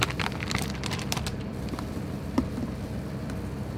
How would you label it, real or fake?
fake